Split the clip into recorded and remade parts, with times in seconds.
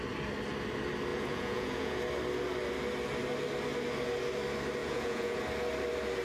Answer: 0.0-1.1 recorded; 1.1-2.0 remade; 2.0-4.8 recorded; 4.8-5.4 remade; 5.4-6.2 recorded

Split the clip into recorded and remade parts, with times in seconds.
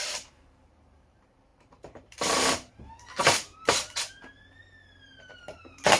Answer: 0.0-6.0 remade